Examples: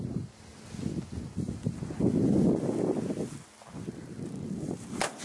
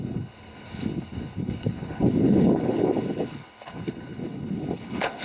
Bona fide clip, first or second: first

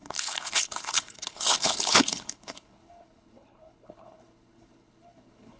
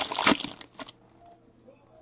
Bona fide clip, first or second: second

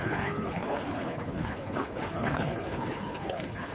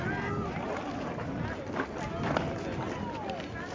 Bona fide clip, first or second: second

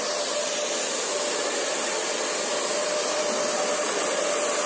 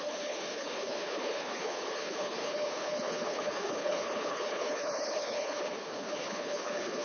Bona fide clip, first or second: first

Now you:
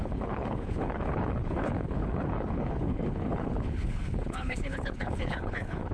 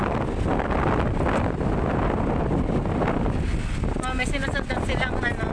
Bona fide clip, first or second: second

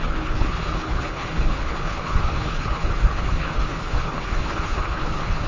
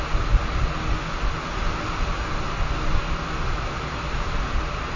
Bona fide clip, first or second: second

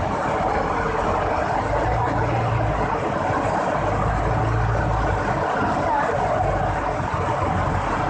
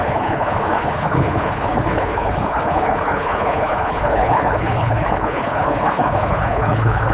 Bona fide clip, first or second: first